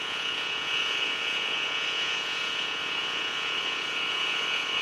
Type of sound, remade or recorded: remade